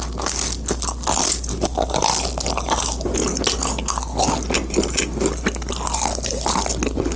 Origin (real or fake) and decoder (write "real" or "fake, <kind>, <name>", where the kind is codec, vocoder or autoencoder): real